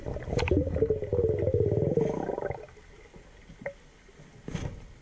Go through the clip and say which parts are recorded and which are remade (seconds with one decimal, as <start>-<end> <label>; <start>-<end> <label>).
0.0-5.0 recorded